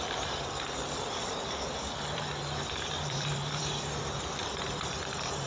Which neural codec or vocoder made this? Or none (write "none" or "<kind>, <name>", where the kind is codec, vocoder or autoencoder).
vocoder, BigVGAN v2